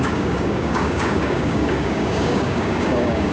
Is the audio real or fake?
fake